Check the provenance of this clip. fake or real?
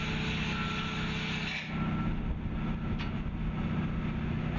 real